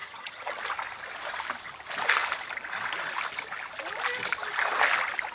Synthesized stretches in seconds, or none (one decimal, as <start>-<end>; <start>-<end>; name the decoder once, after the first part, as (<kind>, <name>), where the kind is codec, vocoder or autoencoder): 0.0-0.6 (vocoder, HiFi-GAN)